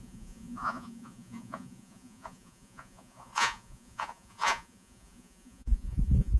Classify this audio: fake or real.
fake